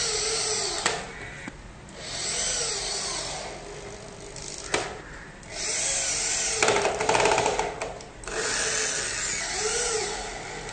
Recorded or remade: recorded